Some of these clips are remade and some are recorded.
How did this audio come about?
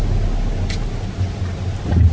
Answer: recorded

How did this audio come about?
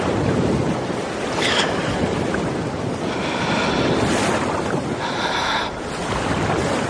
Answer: recorded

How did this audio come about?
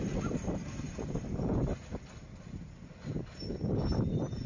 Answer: recorded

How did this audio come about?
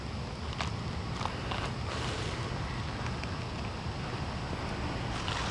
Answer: recorded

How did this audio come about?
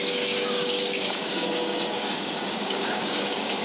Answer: remade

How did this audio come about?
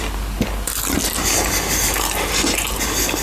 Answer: recorded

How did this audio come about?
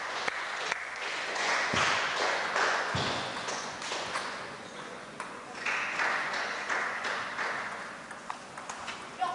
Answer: remade